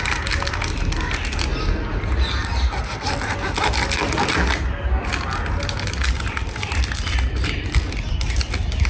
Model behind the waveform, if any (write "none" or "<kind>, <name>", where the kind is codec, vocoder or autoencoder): none